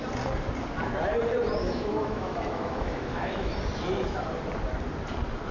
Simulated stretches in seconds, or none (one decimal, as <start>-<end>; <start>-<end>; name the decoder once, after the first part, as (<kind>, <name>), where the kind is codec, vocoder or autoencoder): 1.6-3.5 (autoencoder, DAC-VAE)